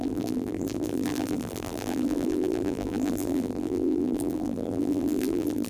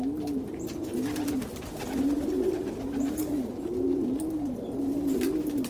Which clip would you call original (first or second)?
second